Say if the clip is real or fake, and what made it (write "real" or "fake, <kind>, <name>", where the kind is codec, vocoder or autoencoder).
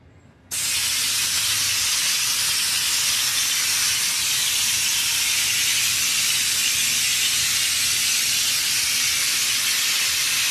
real